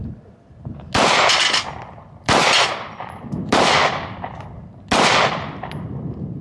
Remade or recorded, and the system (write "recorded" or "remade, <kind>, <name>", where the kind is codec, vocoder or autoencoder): recorded